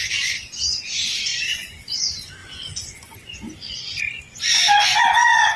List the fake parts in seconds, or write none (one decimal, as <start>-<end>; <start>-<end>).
0.0-5.6